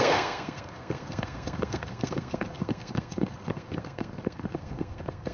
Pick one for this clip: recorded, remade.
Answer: remade